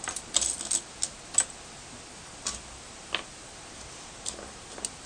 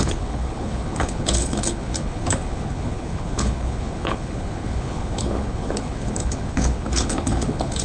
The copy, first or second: second